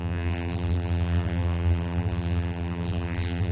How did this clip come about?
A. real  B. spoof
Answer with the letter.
B